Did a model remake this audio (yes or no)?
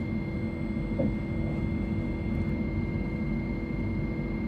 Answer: no